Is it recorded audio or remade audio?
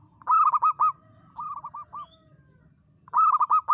recorded